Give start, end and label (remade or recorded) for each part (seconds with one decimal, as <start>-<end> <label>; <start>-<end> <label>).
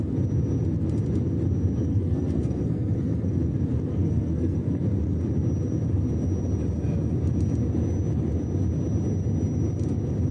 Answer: 0.0-1.9 recorded; 1.9-3.4 remade; 3.4-3.9 recorded; 3.9-4.8 remade; 4.8-10.3 recorded